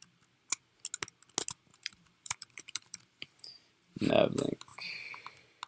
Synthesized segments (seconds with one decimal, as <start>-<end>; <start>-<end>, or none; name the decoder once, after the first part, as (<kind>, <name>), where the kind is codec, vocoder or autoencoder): 1.7-4.1 (vocoder, BigVGAN v2)